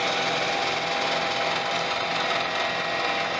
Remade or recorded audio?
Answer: recorded